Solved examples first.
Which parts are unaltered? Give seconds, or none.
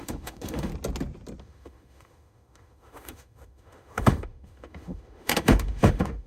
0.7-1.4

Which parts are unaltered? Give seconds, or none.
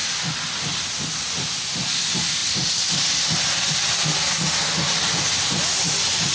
0.0-6.3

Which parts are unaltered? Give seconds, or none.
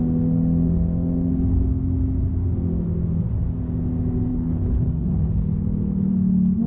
0.0-4.3; 6.1-6.7